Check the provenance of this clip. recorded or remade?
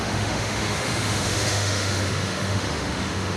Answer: remade